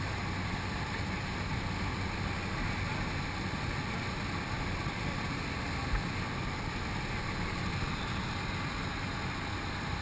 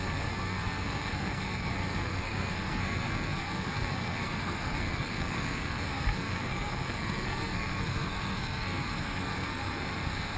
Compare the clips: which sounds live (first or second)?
first